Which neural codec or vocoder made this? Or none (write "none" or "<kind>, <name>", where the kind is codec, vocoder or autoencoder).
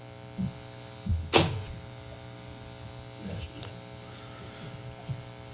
none